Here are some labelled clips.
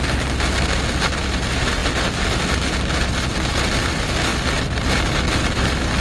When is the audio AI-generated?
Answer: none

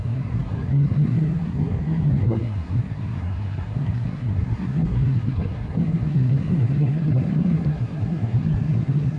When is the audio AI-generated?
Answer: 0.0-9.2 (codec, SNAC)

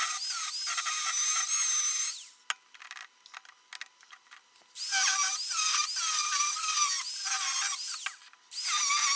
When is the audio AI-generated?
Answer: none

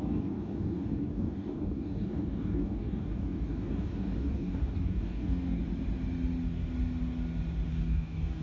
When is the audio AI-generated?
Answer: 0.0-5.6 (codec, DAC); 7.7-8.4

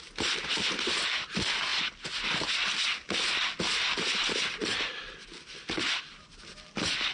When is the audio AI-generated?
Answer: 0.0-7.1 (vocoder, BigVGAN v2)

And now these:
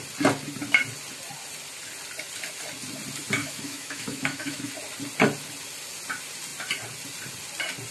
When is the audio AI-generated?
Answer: 3.4-4.7 (autoencoder, DAC-VAE)